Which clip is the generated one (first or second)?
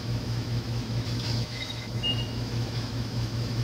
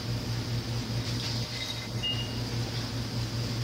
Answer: first